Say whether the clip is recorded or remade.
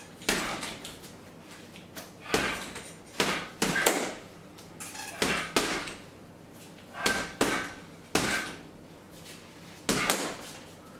recorded